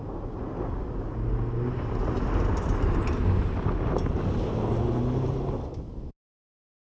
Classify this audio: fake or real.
real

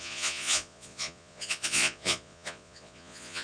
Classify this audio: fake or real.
fake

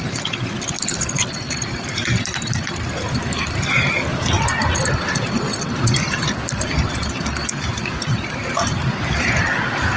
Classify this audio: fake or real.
real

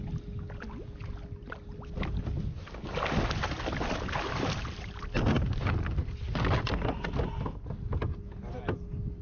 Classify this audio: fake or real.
real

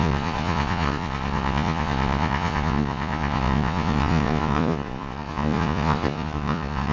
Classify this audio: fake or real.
fake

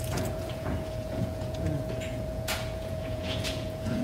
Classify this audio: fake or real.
fake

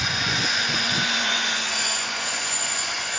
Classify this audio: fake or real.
fake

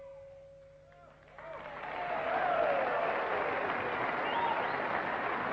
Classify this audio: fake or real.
real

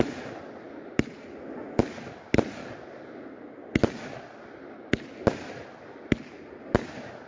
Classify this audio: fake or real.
real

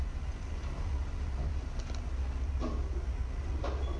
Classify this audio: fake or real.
real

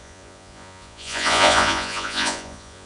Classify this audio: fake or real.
fake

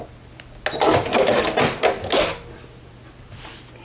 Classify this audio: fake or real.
real